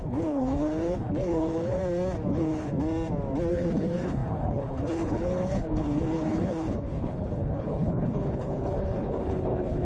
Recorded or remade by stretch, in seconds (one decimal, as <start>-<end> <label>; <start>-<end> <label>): 0.0-1.8 remade; 1.8-2.3 recorded; 2.3-2.7 remade; 2.7-3.5 recorded; 3.5-9.8 remade